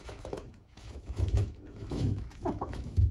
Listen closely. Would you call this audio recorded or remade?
remade